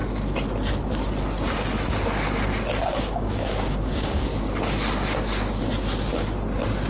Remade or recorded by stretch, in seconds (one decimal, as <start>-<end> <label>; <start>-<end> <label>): 0.0-2.8 recorded; 2.8-4.3 remade; 4.3-6.9 recorded